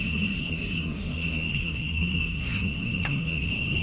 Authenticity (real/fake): fake